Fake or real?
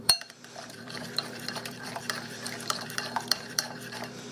fake